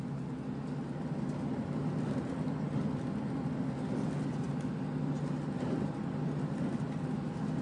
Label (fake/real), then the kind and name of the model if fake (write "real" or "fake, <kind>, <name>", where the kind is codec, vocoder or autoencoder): real